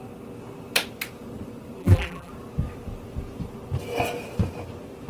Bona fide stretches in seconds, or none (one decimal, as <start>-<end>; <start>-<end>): 0.0-1.8; 2.3-5.1